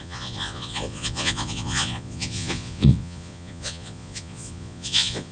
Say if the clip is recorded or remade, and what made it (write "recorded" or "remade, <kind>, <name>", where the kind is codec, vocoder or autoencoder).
remade, vocoder, Vocos